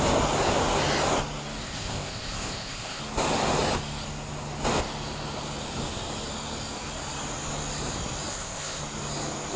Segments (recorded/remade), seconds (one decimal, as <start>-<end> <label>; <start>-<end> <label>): 0.0-1.6 recorded; 1.6-3.0 remade; 3.0-8.3 recorded; 8.3-8.8 remade; 8.8-9.6 recorded